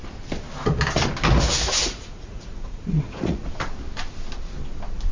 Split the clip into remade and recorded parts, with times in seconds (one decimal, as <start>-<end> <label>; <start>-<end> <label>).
0.0-1.8 recorded; 1.8-3.5 remade; 3.5-5.1 recorded